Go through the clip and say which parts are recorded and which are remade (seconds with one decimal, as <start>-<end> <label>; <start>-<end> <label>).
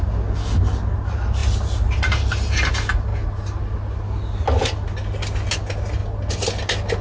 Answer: 0.0-7.0 recorded